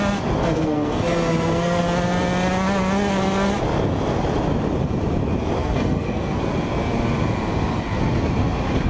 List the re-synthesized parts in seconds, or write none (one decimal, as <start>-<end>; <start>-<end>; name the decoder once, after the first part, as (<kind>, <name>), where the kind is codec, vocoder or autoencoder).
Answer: 0.4-1.8 (codec, SNAC); 5.6-6.4